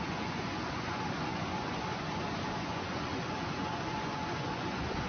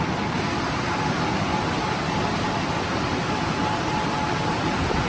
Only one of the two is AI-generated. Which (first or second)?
first